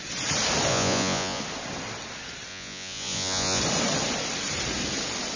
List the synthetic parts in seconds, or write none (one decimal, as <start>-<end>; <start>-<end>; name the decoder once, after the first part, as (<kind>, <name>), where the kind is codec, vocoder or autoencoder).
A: 0.7-1.4 (vocoder, Vocos); 2.5-3.6